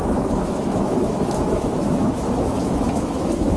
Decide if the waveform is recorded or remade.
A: remade